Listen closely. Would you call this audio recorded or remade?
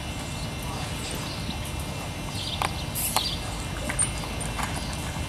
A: recorded